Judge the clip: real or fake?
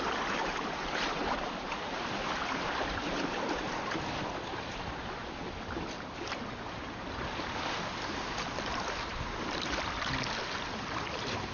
real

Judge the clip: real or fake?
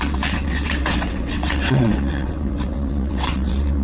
fake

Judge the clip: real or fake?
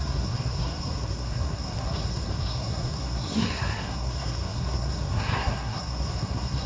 fake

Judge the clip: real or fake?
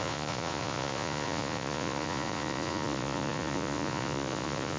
fake